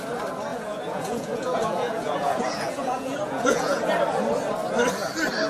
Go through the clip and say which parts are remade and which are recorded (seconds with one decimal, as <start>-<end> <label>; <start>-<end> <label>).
0.0-0.5 recorded; 0.5-3.8 remade; 3.8-5.5 recorded